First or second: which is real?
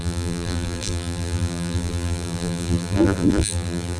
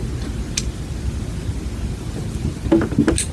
second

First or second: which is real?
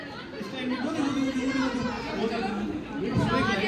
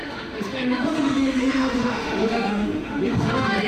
first